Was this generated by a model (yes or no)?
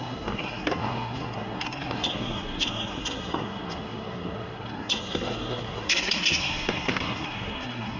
yes